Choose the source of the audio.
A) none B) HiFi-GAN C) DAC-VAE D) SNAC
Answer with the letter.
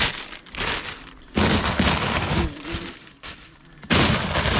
A